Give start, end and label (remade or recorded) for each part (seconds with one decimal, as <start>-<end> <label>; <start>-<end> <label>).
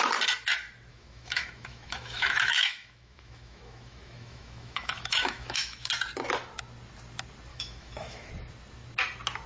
0.0-0.9 recorded; 0.9-5.9 remade; 5.9-7.5 recorded; 7.5-8.3 remade; 8.3-9.5 recorded